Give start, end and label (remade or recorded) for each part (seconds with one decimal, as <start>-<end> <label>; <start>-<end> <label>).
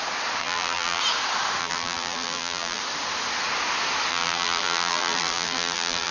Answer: 0.0-0.4 recorded; 0.4-1.0 remade; 1.0-1.6 recorded; 1.6-2.8 remade; 2.8-4.1 recorded; 4.1-6.1 remade